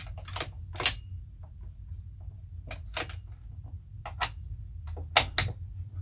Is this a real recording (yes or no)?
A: yes